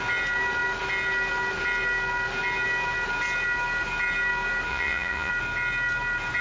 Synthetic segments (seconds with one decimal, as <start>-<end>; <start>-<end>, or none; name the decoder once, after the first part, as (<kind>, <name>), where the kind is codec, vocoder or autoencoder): 4.7-5.3 (vocoder, Vocos)